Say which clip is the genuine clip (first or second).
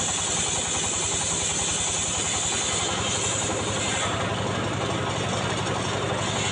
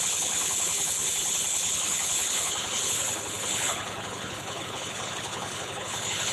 first